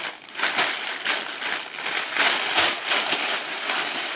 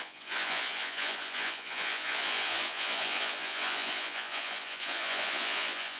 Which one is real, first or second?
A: first